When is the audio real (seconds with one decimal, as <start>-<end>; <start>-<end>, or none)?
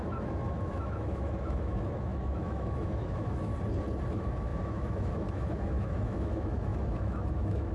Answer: 3.5-4.1